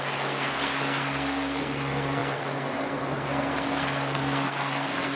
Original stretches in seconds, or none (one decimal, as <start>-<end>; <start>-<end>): none